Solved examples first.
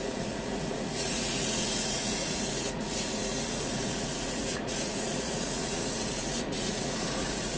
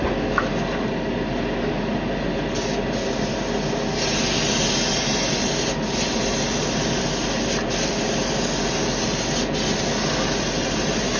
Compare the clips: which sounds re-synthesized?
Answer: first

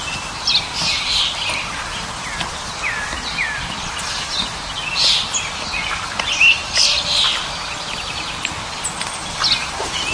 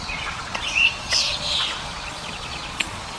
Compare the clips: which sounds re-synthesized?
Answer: second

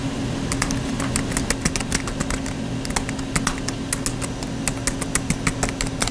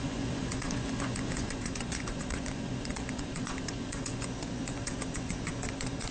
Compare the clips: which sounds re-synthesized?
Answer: second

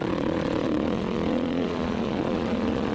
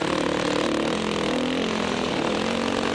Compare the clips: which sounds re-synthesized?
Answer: first